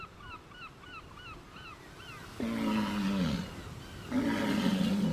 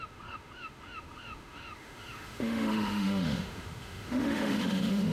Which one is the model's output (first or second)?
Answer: second